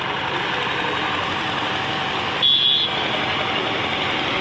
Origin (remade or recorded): recorded